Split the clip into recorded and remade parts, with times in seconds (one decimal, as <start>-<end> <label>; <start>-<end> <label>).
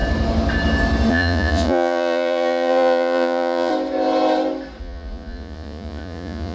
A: 0.0-1.1 recorded; 1.1-3.7 remade; 3.7-4.8 recorded; 4.8-6.5 remade